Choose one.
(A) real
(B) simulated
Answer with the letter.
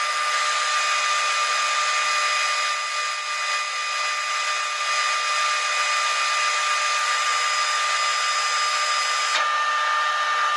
A